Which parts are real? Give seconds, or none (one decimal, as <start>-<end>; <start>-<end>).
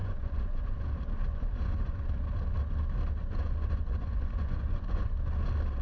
0.8-1.3; 2.1-3.2; 5.1-5.8